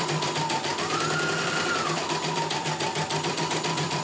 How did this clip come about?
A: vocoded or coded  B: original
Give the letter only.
A